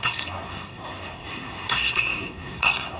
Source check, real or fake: fake